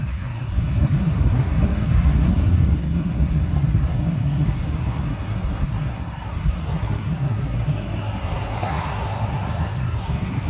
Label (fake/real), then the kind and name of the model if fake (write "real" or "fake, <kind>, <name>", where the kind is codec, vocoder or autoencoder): fake, codec, SNAC